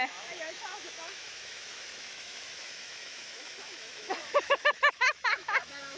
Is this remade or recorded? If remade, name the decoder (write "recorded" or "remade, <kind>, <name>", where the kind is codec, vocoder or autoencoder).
remade, autoencoder, DAC-VAE